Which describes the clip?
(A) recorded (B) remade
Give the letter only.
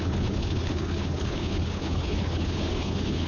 B